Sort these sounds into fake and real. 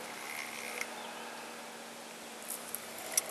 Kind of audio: real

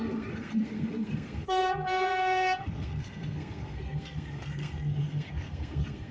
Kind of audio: fake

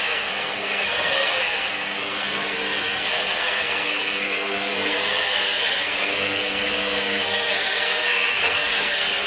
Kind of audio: fake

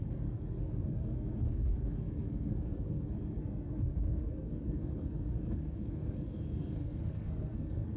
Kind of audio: fake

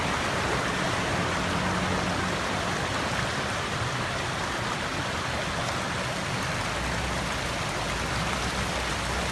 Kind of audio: real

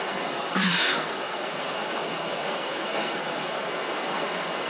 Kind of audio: fake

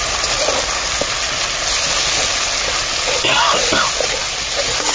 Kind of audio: real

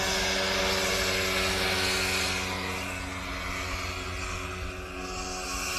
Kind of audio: real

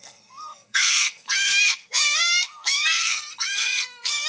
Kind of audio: fake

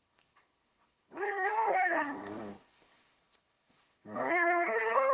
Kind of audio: fake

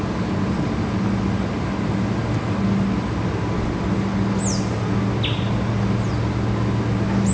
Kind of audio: real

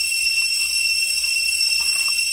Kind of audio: real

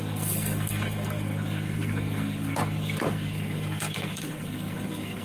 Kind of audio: fake